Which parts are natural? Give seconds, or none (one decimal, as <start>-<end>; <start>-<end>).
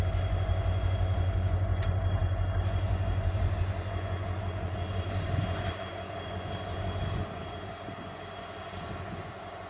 none